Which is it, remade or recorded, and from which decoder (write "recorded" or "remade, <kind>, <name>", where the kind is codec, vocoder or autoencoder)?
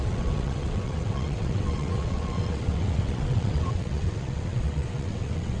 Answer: remade, vocoder, WaveNeXt